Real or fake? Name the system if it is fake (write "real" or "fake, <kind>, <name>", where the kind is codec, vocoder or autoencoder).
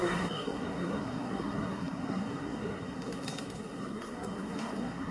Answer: fake, codec, SNAC